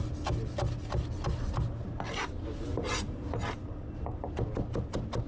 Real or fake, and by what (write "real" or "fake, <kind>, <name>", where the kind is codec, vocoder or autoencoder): real